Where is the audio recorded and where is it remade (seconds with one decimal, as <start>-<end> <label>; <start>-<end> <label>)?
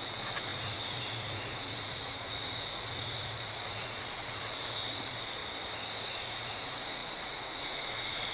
0.0-5.4 remade; 5.4-6.0 recorded; 6.0-8.3 remade